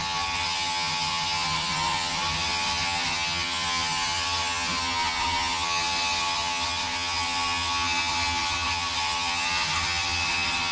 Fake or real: fake